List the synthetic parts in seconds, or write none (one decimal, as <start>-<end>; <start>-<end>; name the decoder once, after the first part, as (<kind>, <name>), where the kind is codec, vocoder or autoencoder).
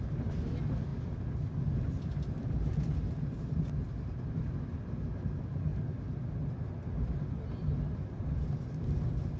none